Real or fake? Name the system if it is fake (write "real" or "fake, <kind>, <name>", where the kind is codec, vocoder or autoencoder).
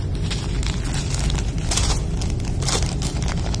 real